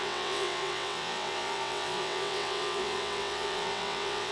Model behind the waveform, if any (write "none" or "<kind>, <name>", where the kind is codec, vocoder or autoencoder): vocoder, WaveNeXt